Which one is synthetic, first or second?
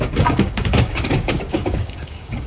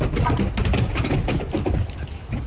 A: first